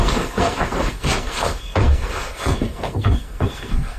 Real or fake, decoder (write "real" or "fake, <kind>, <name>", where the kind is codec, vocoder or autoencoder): fake, codec, SNAC